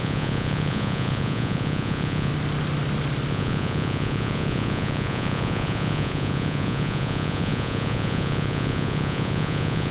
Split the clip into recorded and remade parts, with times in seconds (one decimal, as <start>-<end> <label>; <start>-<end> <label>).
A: 0.0-2.3 remade; 2.3-3.3 recorded; 3.3-9.9 remade

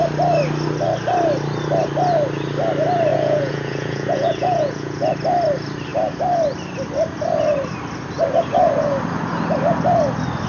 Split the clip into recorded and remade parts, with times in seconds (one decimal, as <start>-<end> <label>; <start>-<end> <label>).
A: 0.0-3.1 recorded; 3.1-5.1 remade; 5.1-10.5 recorded

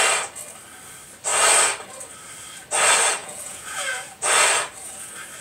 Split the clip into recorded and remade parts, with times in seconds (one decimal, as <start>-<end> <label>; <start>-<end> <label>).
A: 0.0-3.2 recorded; 3.2-4.3 remade; 4.3-5.4 recorded

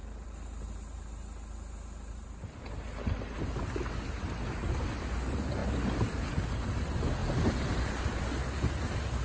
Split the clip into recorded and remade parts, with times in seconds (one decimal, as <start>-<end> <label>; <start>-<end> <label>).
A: 0.0-9.2 recorded